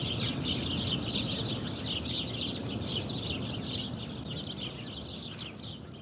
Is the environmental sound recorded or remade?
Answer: recorded